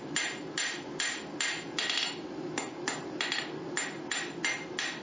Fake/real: real